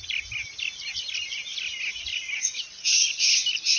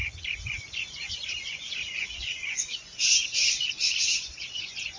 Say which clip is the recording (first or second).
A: first